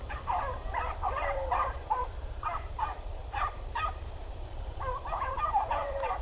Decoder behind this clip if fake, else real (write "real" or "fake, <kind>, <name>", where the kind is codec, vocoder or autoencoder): fake, vocoder, BigVGAN v2